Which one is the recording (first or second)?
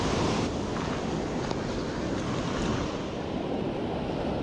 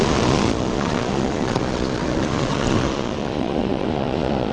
first